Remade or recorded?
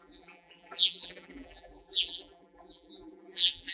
remade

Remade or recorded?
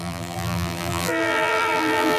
remade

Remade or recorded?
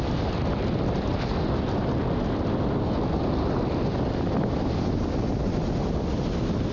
recorded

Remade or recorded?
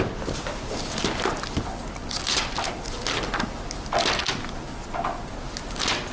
recorded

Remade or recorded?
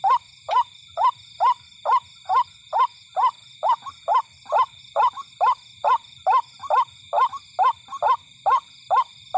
recorded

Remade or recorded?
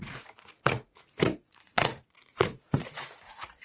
remade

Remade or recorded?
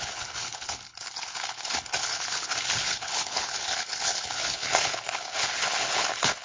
remade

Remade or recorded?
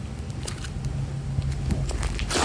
recorded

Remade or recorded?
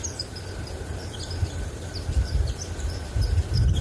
remade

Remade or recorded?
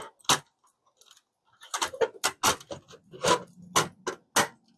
recorded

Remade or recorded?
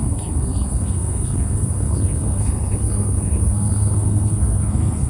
remade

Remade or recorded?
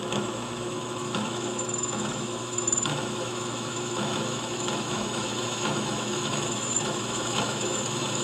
remade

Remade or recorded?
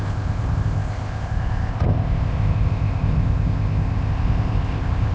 remade